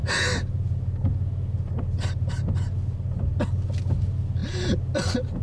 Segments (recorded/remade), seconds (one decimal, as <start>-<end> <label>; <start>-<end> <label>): 0.0-5.4 recorded